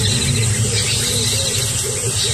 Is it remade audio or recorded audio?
recorded